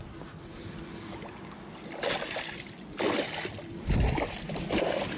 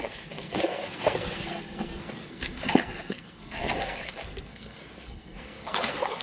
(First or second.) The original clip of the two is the first